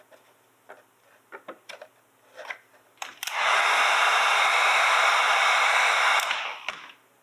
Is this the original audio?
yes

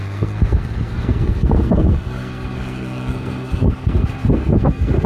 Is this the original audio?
no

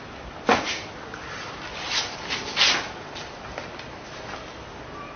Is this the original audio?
yes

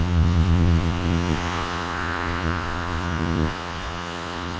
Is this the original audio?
no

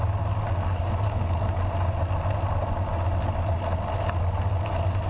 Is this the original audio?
yes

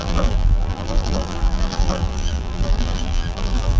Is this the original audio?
no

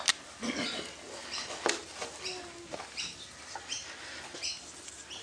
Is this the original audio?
yes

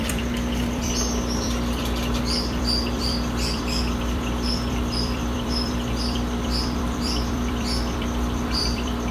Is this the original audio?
no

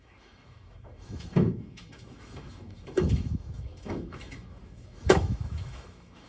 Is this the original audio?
no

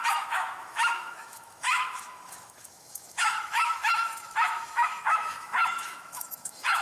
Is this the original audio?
no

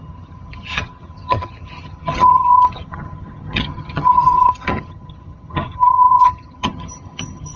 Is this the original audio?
no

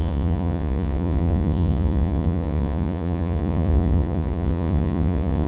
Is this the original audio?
no